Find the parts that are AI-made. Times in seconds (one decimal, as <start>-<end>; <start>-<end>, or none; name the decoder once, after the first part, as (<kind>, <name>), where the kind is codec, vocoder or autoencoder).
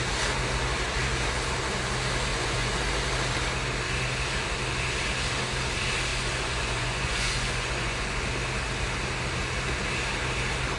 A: 2.3-2.8 (vocoder, Vocos); 6.1-8.2